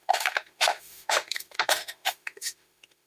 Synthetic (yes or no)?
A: yes